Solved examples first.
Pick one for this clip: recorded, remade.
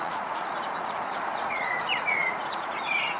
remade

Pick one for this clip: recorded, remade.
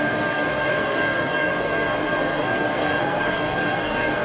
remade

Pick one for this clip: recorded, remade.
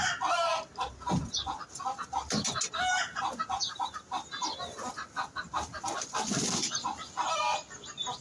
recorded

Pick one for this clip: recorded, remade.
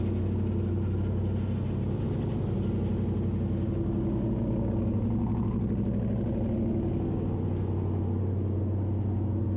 recorded